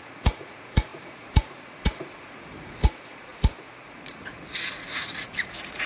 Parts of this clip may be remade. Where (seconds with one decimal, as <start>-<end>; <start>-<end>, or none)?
0.0-3.3; 3.8-5.8

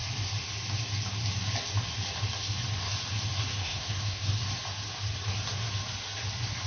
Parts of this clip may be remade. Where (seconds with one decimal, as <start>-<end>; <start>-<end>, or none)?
3.6-4.3

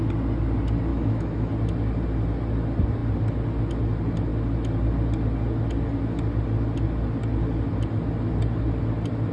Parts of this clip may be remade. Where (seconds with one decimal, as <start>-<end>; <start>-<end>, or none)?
0.9-1.5

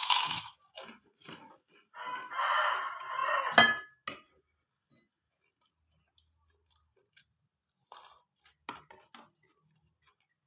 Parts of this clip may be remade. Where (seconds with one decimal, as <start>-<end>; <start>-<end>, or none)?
0.0-0.6

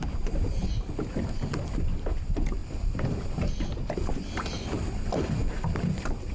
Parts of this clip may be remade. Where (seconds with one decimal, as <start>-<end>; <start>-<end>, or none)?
none

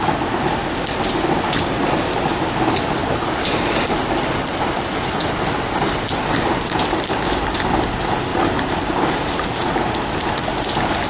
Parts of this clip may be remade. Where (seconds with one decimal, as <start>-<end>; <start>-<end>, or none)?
3.0-3.7